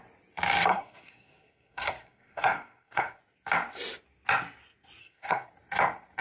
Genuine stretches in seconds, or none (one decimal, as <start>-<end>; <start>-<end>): 0.0-0.7; 3.2-5.0; 5.5-6.2